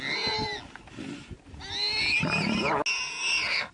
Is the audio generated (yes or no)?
no